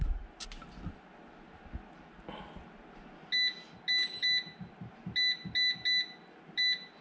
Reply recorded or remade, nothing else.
recorded